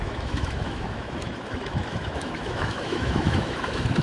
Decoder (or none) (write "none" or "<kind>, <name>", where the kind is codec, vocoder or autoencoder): autoencoder, DAC-VAE